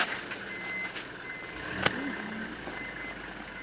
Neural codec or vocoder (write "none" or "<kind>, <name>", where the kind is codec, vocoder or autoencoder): none